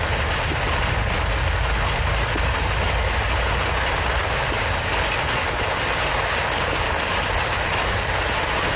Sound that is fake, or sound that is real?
real